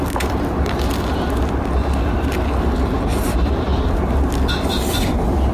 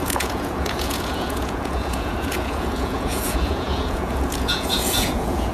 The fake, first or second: second